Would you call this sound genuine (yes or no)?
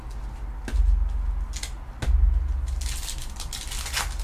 yes